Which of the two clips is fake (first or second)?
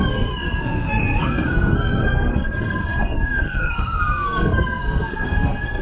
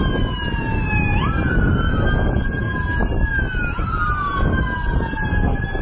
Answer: first